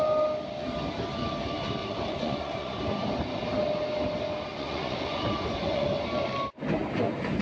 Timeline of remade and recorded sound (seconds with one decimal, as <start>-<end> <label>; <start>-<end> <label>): 0.0-1.8 recorded; 1.8-2.8 remade; 2.8-4.5 recorded; 4.5-5.9 remade; 5.9-7.4 recorded